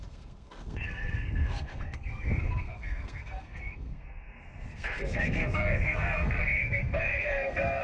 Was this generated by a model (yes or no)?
yes